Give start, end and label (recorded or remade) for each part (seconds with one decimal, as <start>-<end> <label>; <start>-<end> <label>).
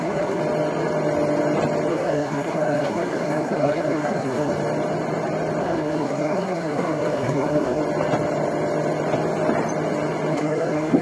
0.0-0.4 remade; 0.4-1.9 recorded; 1.9-4.5 remade; 4.5-5.6 recorded; 5.6-7.8 remade; 7.8-10.3 recorded; 10.3-11.0 remade